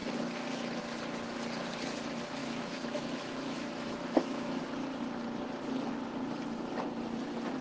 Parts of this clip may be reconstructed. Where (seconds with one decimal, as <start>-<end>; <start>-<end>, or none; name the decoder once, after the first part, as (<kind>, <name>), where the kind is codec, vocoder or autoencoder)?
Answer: 2.4-4.6 (autoencoder, DAC-VAE)